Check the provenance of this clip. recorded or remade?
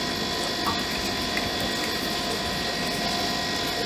recorded